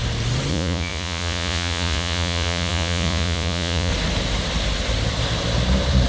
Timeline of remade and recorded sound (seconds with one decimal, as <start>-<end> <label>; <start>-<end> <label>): 0.0-0.5 recorded; 0.5-3.9 remade; 3.9-6.1 recorded